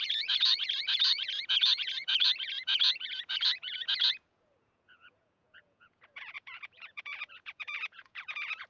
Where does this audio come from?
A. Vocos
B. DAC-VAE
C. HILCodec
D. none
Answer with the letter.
A